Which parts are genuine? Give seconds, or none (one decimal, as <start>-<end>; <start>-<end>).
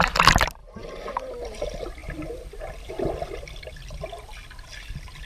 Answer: 0.0-0.6; 1.6-5.3